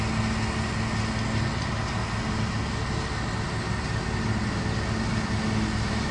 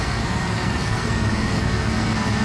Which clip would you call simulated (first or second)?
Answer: second